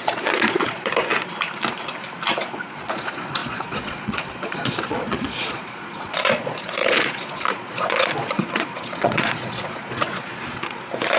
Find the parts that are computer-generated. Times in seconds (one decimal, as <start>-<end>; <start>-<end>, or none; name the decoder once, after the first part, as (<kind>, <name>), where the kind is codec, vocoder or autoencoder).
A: 0.0-0.9 (vocoder, Vocos); 2.5-11.2